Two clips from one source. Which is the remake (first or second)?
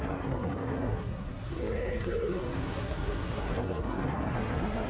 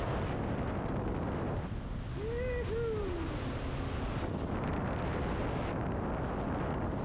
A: first